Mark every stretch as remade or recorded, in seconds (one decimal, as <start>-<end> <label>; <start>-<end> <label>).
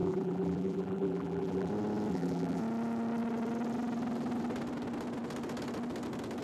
0.0-1.7 remade; 1.7-2.1 recorded; 2.1-2.6 remade; 2.6-6.4 recorded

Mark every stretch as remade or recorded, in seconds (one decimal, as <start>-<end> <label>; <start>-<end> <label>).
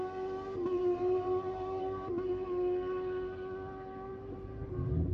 0.0-0.8 recorded; 0.8-2.1 remade; 2.1-4.1 recorded; 4.1-5.1 remade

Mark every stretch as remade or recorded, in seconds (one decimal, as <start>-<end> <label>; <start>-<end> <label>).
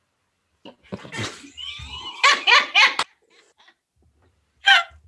0.0-5.1 recorded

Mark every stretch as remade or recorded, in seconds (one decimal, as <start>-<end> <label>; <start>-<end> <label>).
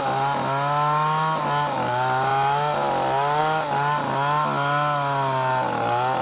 0.0-6.2 recorded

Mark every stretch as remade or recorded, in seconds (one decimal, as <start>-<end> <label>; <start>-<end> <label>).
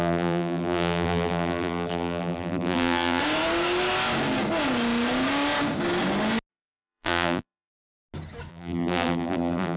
0.0-3.2 remade; 3.2-6.5 recorded; 6.5-7.7 remade; 7.7-8.5 recorded; 8.5-9.8 remade